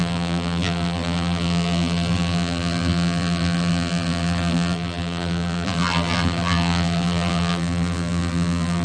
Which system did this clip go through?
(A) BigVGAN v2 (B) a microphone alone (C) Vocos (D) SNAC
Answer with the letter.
A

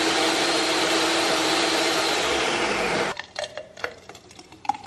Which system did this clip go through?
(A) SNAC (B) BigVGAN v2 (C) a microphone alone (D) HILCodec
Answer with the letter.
B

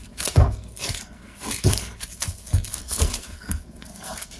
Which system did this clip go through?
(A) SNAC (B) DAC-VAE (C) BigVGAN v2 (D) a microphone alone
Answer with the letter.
A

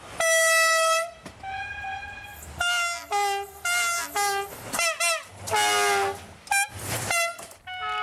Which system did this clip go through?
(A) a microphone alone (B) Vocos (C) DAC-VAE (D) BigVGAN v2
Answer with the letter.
A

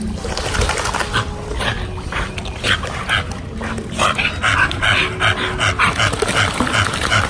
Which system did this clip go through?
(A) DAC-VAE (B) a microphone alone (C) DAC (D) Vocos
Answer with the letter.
B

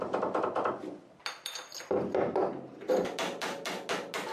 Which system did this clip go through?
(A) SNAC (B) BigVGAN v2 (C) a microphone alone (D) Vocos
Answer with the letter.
C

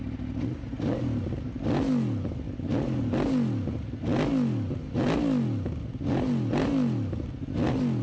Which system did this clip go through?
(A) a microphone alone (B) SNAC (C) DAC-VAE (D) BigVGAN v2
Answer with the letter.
A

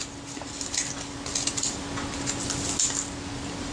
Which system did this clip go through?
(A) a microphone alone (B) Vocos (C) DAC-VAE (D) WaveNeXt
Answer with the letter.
A